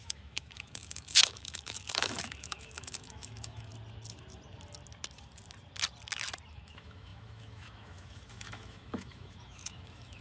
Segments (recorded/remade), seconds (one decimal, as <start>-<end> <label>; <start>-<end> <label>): 0.0-3.7 remade; 3.7-6.5 recorded; 6.5-10.2 remade